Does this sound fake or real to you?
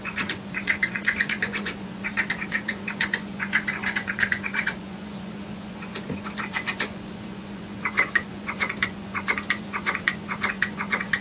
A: fake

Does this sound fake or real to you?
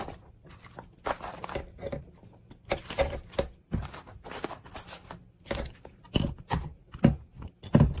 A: real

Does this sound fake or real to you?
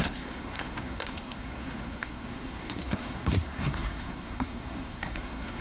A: fake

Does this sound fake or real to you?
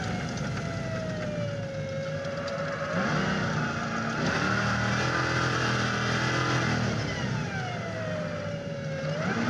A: real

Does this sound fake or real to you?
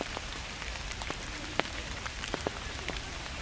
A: fake